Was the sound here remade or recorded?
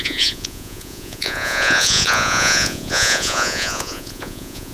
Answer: remade